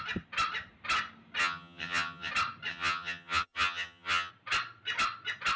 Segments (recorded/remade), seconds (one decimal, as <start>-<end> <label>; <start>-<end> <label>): 0.0-1.4 recorded; 1.4-2.3 remade; 2.3-2.7 recorded; 2.7-4.3 remade; 4.3-5.6 recorded